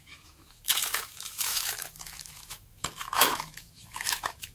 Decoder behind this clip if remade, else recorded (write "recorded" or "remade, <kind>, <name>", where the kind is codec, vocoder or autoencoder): remade, autoencoder, DAC-VAE